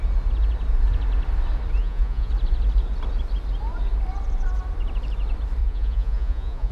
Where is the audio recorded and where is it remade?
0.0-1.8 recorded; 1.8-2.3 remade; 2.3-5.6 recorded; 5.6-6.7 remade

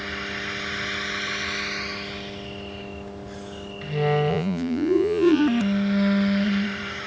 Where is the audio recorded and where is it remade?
0.0-4.3 recorded; 4.3-5.4 remade; 5.4-7.1 recorded

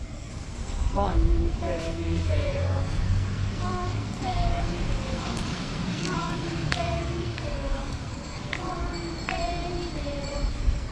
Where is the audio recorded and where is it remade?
0.0-8.7 remade; 8.7-10.5 recorded; 10.5-10.9 remade

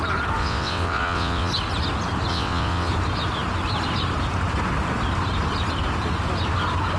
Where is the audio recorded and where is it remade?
0.0-0.4 recorded; 0.4-1.5 remade; 1.5-2.3 recorded; 2.3-2.9 remade; 2.9-7.0 recorded